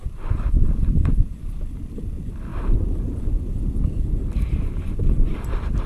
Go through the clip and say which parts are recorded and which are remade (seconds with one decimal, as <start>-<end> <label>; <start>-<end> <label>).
0.0-5.9 remade